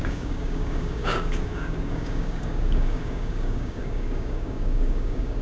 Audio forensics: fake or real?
fake